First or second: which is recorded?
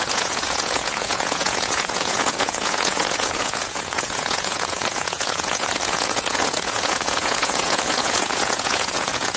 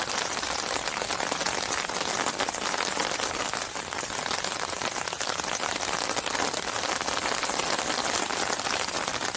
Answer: second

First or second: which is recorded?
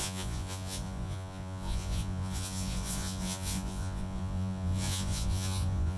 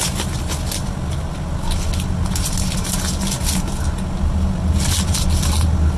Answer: second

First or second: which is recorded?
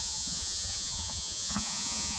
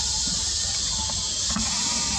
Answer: second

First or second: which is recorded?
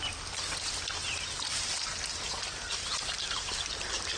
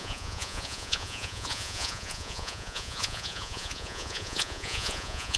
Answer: first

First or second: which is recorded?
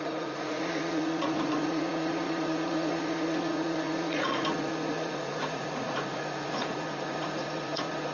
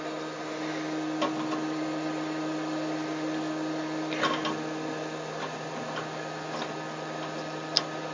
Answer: second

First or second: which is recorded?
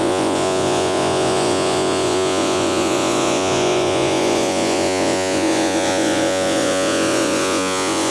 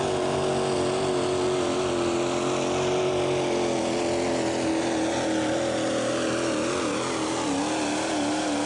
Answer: second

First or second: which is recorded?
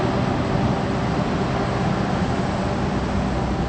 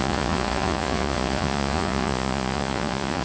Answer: first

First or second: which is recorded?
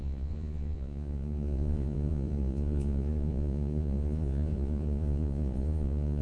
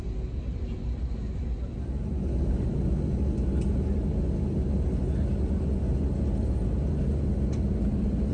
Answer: second